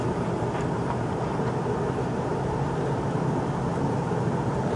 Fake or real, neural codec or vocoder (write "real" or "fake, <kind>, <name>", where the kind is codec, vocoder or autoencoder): fake, vocoder, BigVGAN v2